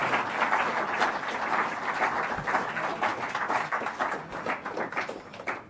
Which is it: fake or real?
real